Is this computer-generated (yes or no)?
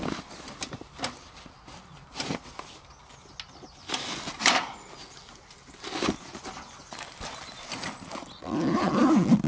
no